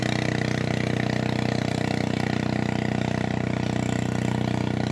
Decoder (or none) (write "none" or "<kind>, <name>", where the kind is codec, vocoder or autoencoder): none